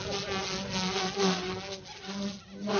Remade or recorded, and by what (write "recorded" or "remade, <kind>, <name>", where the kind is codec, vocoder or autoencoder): recorded